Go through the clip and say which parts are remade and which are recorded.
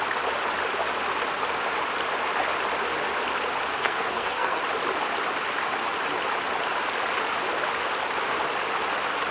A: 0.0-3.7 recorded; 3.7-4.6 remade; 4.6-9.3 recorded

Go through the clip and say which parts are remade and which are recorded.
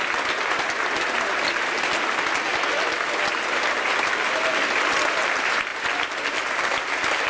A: 0.0-2.5 recorded; 2.5-3.3 remade; 3.3-7.3 recorded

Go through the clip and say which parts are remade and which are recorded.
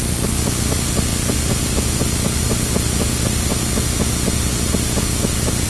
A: 0.0-5.7 recorded